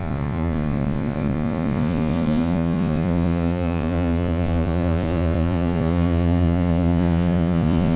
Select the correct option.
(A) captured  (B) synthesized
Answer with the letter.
B